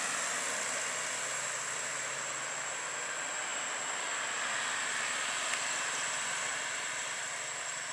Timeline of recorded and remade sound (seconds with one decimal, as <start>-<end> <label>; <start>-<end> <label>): 0.0-7.9 recorded